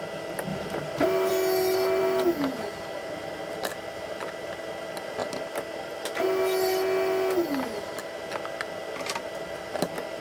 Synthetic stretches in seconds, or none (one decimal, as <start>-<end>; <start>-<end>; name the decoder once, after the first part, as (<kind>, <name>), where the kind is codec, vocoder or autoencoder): 0.5-1.3 (vocoder, BigVGAN v2)